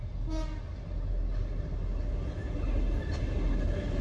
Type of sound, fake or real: real